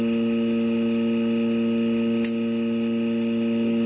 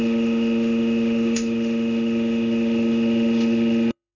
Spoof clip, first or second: second